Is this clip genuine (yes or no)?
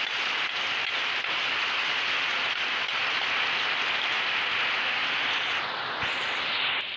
yes